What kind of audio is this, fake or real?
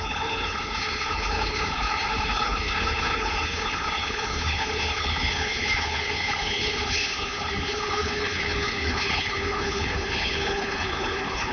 fake